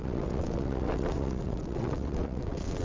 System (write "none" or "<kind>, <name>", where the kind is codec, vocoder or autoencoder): vocoder, WaveNeXt